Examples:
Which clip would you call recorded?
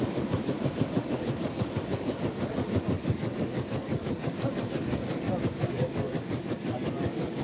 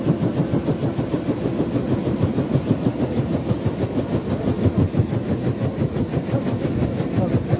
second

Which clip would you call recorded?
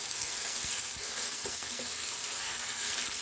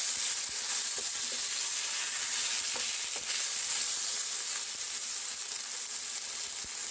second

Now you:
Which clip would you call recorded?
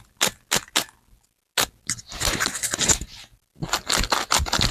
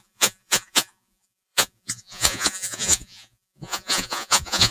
first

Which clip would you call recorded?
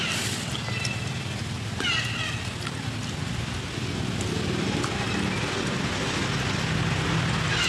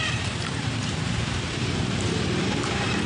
first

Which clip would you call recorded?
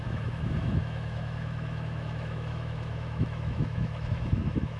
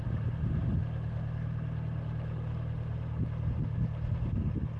second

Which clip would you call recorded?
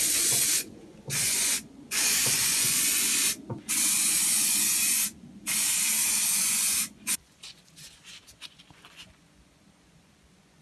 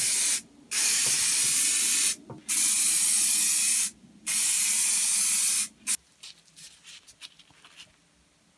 second